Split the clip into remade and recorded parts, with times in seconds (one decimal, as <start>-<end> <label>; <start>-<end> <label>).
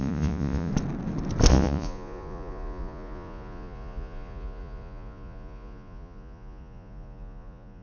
0.0-0.7 remade; 0.7-1.5 recorded; 1.5-7.8 remade